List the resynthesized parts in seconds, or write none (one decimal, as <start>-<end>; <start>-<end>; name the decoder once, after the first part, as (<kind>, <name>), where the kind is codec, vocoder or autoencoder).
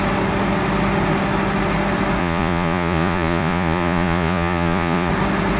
2.2-5.1 (vocoder, Vocos)